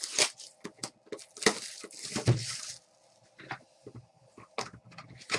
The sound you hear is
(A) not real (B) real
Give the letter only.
B